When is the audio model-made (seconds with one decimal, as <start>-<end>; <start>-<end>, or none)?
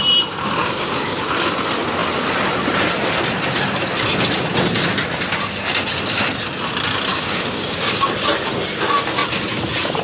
0.6-1.2; 7.1-8.0